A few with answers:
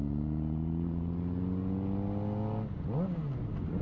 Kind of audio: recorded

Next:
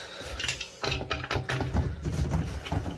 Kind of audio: recorded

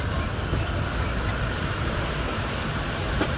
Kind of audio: recorded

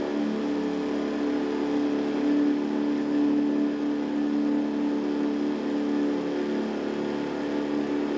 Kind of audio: recorded